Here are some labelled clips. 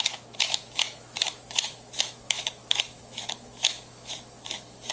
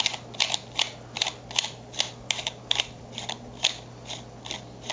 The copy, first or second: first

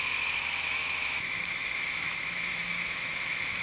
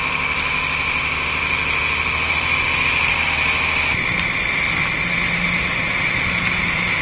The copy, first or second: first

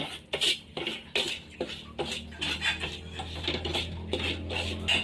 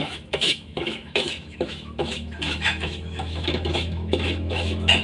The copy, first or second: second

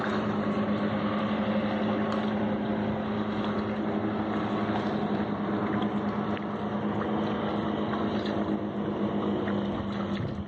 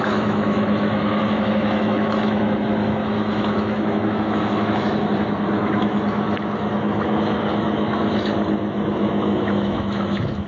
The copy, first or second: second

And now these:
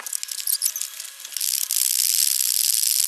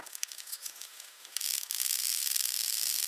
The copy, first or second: second